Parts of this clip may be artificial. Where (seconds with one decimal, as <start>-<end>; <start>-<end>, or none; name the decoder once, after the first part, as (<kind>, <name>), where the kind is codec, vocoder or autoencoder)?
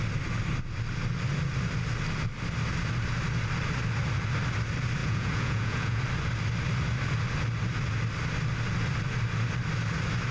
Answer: 5.0-6.0 (vocoder, Vocos)